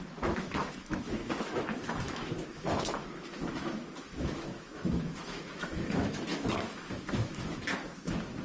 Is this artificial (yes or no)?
yes